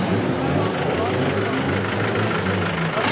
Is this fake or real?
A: real